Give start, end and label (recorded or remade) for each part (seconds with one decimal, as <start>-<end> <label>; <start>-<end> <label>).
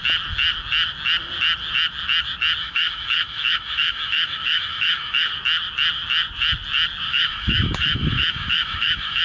0.0-2.6 recorded; 2.6-5.3 remade; 5.3-7.1 recorded; 7.1-9.2 remade